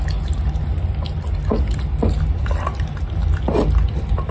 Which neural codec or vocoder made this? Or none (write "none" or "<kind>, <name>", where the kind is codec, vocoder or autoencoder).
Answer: none